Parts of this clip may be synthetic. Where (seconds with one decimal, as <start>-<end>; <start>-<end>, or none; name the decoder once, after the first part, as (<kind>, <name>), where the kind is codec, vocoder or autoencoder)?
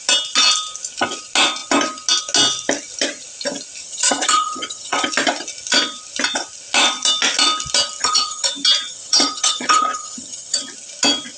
3.8-5.1 (vocoder, HiFi-GAN); 8.0-8.5; 8.9-10.6